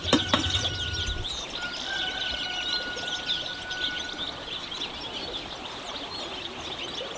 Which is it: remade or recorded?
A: recorded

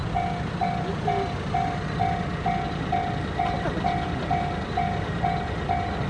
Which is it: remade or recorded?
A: recorded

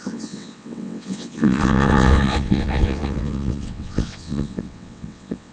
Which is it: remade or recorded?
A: remade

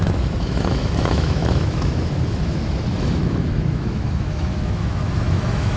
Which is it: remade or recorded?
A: remade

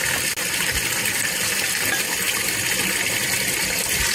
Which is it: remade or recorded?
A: recorded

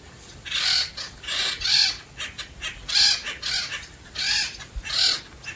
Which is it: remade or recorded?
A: recorded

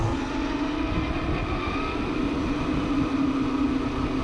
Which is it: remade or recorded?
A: recorded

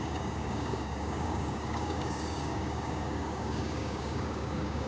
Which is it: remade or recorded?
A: remade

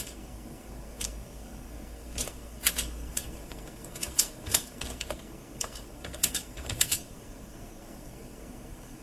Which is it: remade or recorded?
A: remade